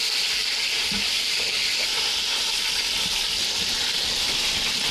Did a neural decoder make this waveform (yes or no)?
no